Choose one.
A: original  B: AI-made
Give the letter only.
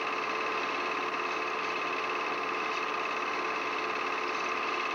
A